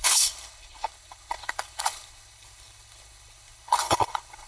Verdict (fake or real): fake